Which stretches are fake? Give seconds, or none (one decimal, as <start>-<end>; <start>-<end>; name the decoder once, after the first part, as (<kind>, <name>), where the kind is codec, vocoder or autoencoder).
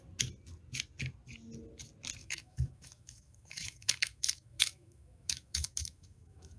2.2-6.6 (autoencoder, DAC-VAE)